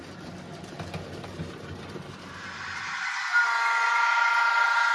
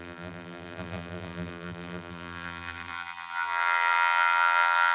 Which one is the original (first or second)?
first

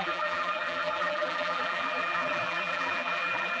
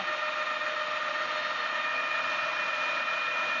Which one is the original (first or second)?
second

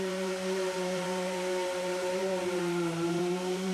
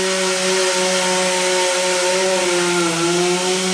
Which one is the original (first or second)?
second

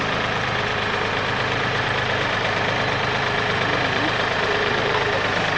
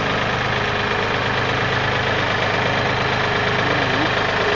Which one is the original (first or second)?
second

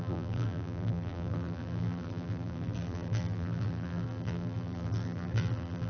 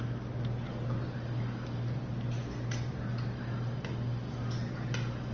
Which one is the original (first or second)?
second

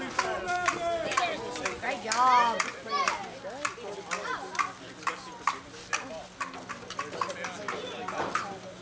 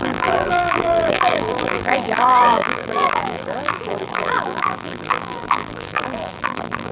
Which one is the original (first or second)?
first